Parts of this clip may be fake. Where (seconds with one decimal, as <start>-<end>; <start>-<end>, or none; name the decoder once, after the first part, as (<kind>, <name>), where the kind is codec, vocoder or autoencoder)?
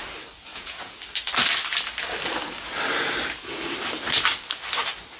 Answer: 0.5-1.0 (vocoder, Vocos)